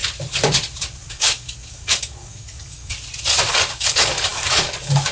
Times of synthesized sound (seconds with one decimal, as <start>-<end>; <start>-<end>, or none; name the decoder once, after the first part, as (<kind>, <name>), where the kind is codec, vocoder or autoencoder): 1.1-2.9 (codec, DAC); 3.5-5.1